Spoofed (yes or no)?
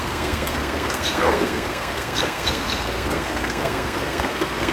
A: yes